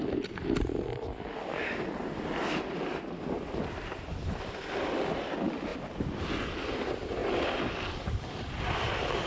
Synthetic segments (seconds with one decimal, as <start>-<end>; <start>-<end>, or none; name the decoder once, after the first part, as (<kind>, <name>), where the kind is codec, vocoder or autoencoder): none